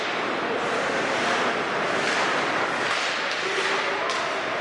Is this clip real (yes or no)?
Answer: yes